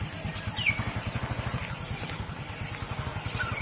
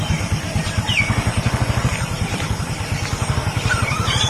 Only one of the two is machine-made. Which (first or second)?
second